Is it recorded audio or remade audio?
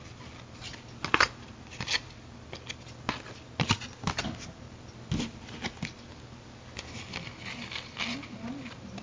recorded